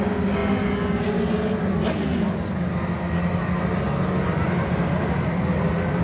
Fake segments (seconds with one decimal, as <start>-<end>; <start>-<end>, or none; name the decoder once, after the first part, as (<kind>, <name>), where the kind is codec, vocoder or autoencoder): none